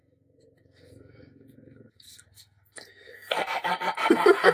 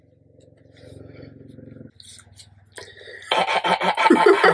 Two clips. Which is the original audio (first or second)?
second